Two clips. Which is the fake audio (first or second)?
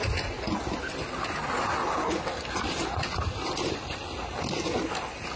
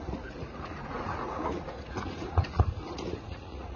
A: second